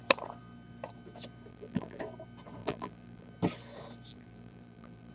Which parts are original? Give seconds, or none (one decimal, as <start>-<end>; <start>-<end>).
0.0-1.5; 2.0-2.6; 3.3-4.1